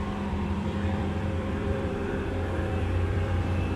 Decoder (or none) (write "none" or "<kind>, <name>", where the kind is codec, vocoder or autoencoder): vocoder, BigVGAN v2